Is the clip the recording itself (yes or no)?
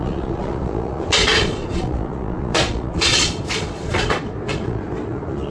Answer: no